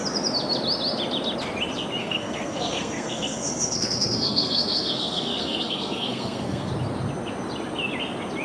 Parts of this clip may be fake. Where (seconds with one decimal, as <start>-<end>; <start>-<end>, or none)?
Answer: 2.0-6.7